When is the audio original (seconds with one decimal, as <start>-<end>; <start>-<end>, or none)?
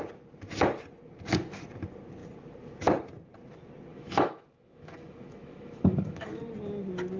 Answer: 0.0-3.9; 6.4-7.2